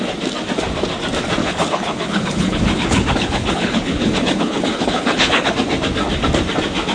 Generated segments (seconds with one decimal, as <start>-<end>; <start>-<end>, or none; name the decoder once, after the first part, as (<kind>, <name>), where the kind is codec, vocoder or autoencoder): 1.4-5.5 (codec, HILCodec)